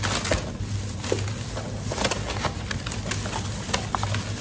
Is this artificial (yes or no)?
no